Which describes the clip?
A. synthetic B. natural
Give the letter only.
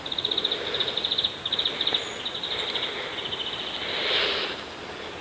B